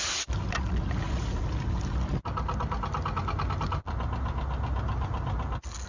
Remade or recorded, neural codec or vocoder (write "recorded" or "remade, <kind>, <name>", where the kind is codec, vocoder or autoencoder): recorded